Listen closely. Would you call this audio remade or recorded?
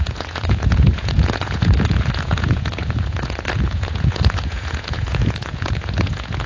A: remade